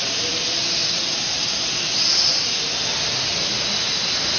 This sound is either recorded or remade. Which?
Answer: recorded